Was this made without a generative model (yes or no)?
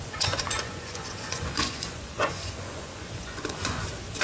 no